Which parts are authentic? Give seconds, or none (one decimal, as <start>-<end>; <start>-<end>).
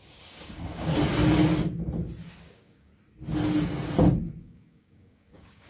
0.9-2.4; 2.9-4.4